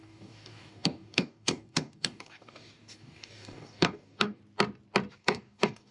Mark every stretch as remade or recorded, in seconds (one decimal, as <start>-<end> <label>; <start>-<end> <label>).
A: 0.0-4.4 remade; 4.4-5.1 recorded; 5.1-5.9 remade